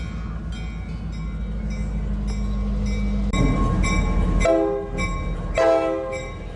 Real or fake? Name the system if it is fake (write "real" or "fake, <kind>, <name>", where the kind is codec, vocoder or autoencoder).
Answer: real